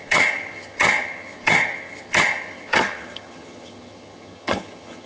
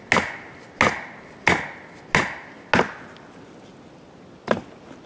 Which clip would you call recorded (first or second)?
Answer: second